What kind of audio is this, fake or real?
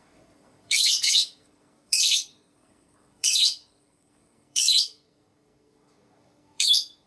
fake